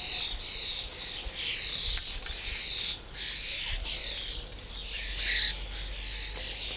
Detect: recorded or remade recorded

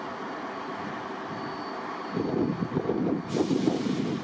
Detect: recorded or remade recorded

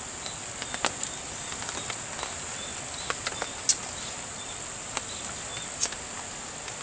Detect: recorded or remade recorded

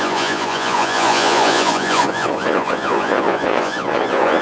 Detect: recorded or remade remade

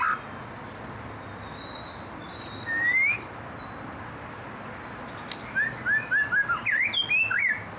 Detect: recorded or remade recorded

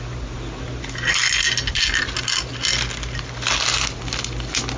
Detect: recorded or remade recorded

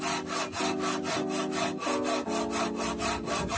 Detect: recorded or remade recorded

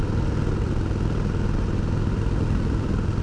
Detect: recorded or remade recorded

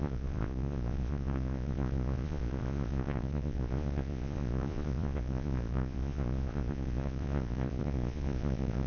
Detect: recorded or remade remade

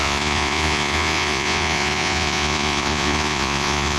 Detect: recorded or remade remade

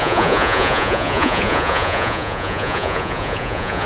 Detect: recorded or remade remade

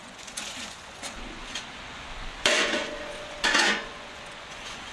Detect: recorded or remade remade